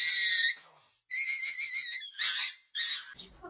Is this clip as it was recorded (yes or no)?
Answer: yes